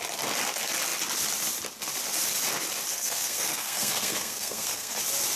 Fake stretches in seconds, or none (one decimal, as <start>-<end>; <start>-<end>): 2.9-5.0